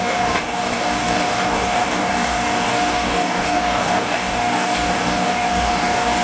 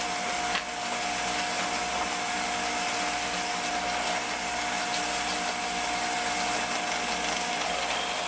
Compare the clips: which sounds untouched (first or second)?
second